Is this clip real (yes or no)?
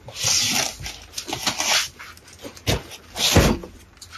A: yes